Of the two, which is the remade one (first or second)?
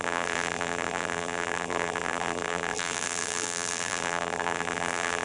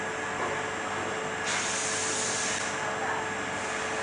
first